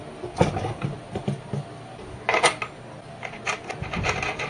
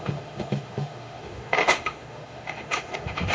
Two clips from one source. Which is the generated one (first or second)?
second